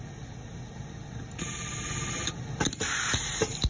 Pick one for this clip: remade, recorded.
recorded